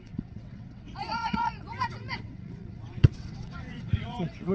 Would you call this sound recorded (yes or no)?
no